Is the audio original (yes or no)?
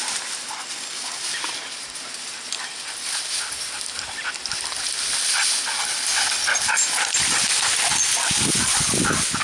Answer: yes